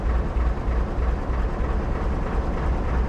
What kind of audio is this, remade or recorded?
recorded